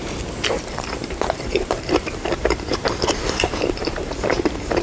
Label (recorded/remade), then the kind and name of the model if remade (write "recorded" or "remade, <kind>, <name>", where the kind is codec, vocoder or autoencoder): remade, vocoder, BigVGAN v2